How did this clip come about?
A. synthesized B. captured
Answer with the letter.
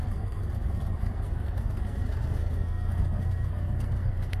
A